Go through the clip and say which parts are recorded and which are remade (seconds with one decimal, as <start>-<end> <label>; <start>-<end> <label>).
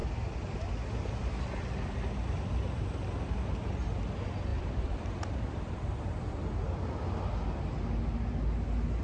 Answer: 0.0-4.5 recorded; 4.5-6.3 remade; 6.3-9.0 recorded